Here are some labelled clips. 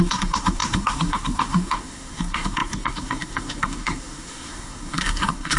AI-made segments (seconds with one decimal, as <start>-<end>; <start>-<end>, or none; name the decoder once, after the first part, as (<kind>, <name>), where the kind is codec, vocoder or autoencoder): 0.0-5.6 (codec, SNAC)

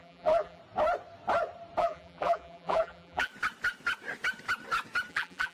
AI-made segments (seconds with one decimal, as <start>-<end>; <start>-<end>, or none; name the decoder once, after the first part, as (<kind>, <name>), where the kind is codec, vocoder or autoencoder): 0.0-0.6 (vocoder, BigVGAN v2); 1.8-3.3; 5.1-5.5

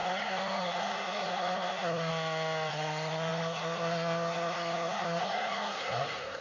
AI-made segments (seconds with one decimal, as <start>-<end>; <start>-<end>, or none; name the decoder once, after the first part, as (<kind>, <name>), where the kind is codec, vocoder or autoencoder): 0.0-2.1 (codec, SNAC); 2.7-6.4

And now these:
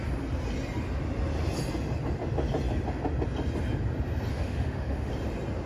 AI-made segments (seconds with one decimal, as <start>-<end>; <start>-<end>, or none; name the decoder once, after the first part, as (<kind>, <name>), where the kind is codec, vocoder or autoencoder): 4.3-5.1 (autoencoder, DAC-VAE)

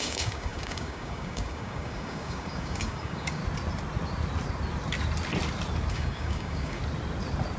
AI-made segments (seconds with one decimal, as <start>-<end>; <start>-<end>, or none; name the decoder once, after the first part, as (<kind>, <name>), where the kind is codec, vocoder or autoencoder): 0.0-3.4 (codec, DAC); 5.9-6.8

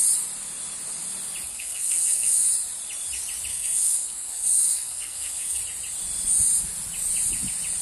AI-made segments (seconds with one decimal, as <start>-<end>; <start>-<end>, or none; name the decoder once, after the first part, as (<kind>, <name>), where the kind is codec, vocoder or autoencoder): 1.5-2.5 (codec, SNAC); 3.5-5.6